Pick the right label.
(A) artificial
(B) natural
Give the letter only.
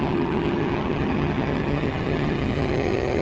A